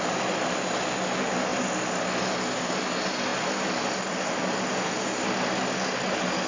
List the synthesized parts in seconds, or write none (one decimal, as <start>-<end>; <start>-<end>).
none